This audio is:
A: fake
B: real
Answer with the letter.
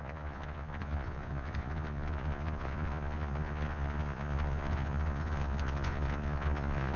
A